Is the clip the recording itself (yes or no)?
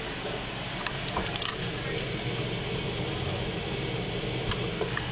yes